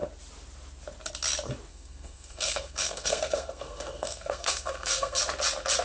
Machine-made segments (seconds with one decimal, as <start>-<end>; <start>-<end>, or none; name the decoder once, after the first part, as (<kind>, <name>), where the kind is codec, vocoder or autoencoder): 1.7-5.2 (codec, SNAC)